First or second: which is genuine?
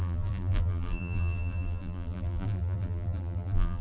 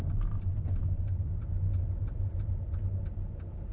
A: second